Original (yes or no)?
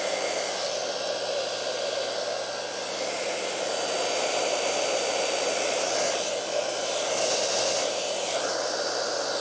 yes